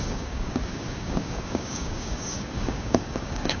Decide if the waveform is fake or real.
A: fake